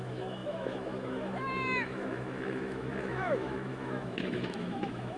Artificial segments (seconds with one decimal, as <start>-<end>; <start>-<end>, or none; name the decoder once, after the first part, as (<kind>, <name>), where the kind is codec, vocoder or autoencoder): 0.0-5.2 (autoencoder, DAC-VAE)